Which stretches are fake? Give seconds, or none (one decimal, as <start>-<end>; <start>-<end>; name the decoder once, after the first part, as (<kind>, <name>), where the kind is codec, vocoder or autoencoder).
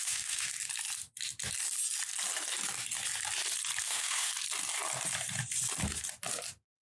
0.0-0.5 (autoencoder, DAC-VAE); 3.8-4.3